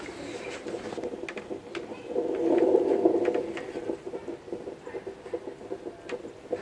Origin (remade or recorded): recorded